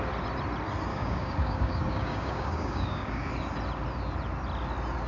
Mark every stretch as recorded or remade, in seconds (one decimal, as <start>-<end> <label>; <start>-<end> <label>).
0.0-0.9 recorded; 0.9-3.3 remade; 3.3-5.1 recorded